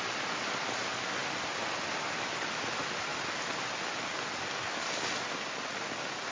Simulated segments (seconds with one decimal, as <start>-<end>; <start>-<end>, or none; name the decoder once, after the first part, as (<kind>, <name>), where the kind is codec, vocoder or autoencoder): none